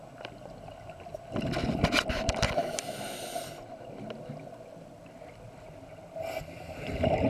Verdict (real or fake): real